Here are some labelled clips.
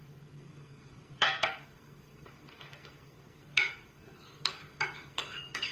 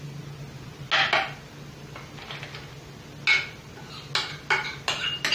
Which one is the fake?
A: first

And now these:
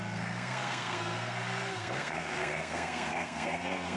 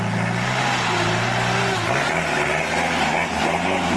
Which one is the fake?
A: first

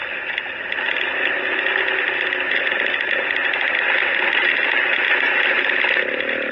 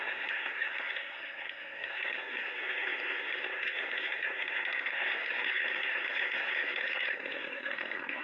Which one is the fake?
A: second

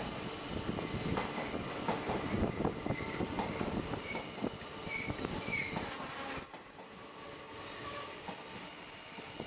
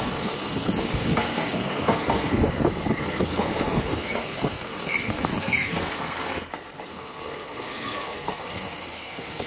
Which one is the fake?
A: second